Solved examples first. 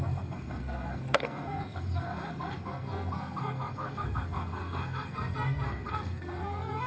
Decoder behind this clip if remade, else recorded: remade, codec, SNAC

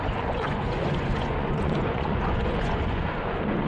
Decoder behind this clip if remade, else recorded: remade, vocoder, Vocos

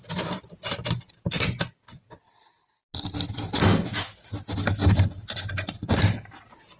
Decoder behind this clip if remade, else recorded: recorded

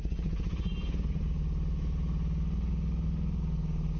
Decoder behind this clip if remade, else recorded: recorded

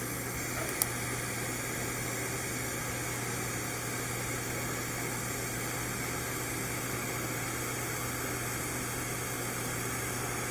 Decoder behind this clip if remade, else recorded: recorded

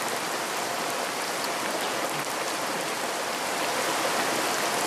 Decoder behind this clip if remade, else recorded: recorded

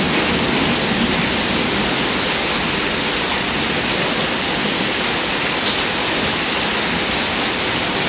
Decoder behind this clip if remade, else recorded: recorded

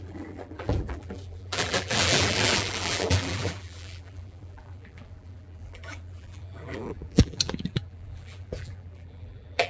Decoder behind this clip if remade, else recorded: remade, vocoder, BigVGAN v2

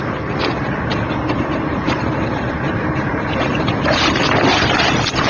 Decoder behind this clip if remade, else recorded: recorded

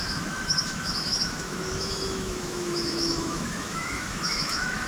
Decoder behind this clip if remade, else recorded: remade, autoencoder, DAC-VAE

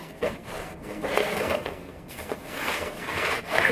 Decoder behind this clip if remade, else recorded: remade, codec, SNAC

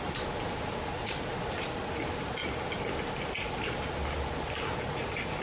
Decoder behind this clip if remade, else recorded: recorded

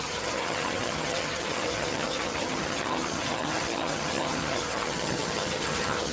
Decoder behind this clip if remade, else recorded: remade, vocoder, HiFi-GAN